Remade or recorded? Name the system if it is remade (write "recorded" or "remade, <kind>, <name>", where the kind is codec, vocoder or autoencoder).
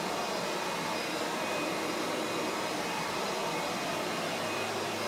remade, vocoder, BigVGAN v2